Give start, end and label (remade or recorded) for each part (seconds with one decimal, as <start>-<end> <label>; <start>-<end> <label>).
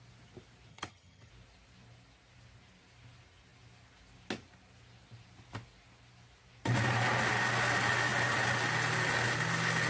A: 0.0-0.7 recorded; 0.7-1.3 remade; 1.3-9.9 recorded